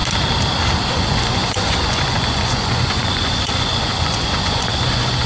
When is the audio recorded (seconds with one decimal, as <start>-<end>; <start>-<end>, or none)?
0.0-0.9

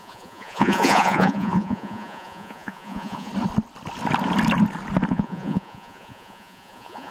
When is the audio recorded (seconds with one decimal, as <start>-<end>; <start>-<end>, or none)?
3.3-5.1

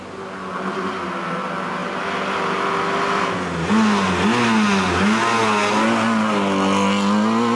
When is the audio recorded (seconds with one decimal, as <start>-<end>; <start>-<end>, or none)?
0.0-7.5

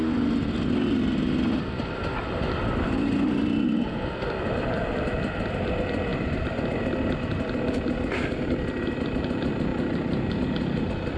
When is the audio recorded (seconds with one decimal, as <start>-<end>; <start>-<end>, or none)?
0.0-11.2